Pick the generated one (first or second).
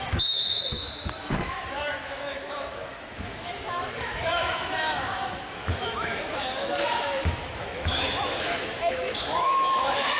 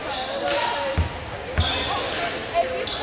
first